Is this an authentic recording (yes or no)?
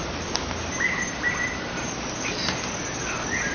yes